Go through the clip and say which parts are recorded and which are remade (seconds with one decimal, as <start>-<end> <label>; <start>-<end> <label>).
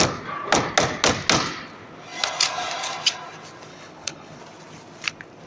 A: 0.0-3.7 recorded; 3.7-4.4 remade; 4.4-5.5 recorded